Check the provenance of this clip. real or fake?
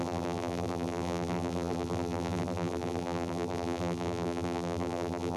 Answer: fake